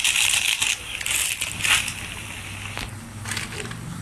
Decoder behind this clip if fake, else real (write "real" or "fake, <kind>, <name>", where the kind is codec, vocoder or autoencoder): real